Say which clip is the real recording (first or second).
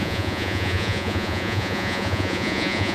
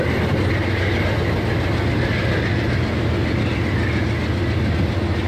second